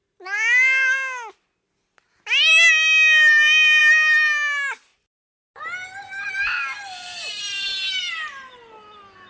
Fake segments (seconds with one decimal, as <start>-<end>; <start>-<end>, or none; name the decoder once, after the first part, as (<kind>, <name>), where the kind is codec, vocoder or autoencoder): none